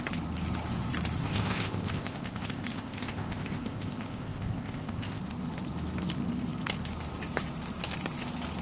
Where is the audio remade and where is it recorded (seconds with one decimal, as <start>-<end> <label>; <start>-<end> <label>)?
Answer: 0.0-1.2 recorded; 1.2-5.2 remade; 5.2-8.6 recorded